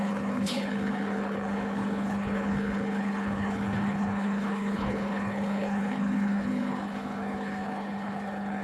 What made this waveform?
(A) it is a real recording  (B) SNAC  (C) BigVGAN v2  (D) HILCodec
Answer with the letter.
D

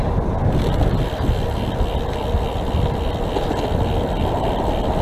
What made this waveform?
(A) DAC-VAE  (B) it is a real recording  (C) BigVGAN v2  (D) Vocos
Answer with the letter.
B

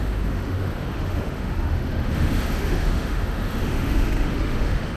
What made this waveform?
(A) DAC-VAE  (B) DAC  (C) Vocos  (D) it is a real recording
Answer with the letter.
A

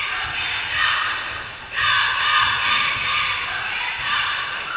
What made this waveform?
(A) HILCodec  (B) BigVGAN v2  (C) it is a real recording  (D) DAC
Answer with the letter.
C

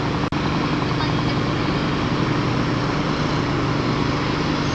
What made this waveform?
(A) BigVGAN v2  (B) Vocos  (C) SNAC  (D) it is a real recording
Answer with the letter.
D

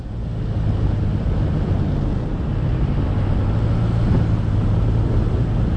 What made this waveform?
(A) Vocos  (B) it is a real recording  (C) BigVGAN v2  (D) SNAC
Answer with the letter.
B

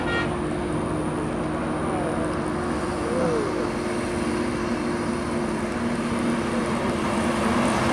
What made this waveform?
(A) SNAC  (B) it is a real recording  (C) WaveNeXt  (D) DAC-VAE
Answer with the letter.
B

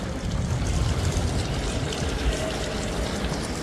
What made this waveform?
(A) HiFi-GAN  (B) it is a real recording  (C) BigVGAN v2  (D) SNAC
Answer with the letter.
B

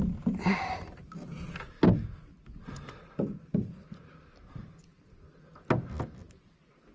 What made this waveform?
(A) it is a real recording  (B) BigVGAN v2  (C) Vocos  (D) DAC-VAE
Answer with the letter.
A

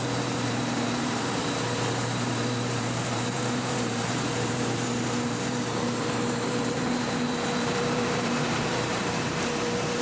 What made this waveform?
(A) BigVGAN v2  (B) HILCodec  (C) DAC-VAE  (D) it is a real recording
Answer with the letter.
A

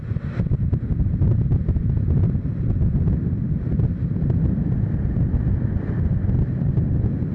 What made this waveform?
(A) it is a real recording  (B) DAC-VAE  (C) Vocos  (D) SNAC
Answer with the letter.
A